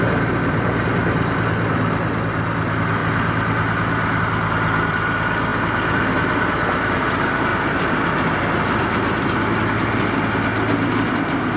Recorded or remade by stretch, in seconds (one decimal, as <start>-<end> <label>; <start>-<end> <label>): 0.0-11.6 recorded